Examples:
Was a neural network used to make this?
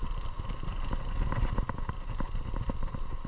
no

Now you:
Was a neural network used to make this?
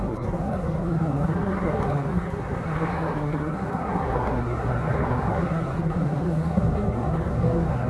yes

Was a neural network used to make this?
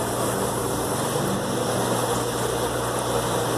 no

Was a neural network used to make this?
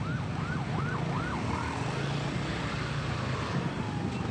no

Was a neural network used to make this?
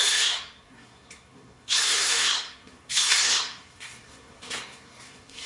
yes